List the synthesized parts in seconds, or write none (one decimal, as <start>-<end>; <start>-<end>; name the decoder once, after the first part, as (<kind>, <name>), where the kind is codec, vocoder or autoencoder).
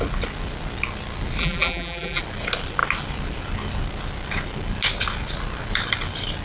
1.4-2.2 (vocoder, BigVGAN v2)